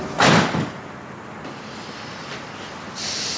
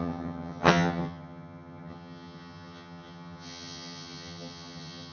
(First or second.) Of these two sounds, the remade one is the second